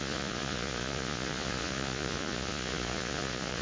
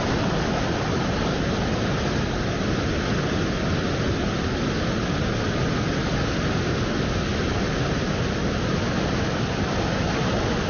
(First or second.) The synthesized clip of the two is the first